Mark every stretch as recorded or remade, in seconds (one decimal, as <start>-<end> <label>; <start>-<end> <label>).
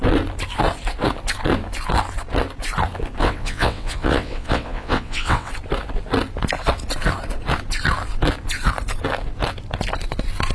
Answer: 0.0-3.2 recorded; 3.2-5.5 remade; 5.5-10.5 recorded